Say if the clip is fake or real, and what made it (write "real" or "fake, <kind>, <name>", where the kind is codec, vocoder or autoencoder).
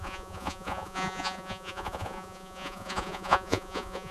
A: fake, vocoder, Vocos